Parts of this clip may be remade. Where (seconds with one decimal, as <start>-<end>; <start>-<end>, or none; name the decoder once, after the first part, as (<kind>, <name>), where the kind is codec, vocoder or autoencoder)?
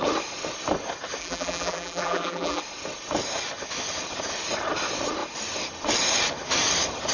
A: 1.2-2.6 (vocoder, BigVGAN v2)